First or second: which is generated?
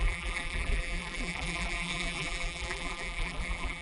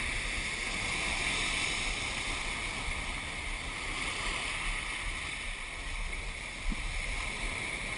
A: first